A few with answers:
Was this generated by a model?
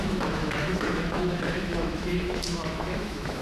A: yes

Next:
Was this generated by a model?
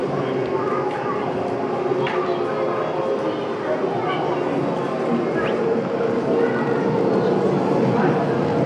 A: no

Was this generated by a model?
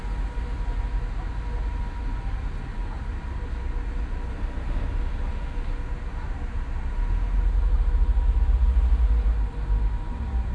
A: no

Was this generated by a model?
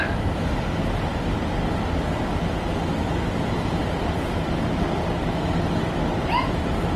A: no